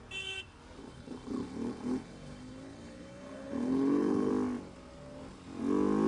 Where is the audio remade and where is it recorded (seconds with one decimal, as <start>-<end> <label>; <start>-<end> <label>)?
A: 0.0-0.8 recorded; 0.8-4.3 remade; 4.3-6.1 recorded